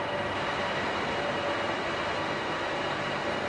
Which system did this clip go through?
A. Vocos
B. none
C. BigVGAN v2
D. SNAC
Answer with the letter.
B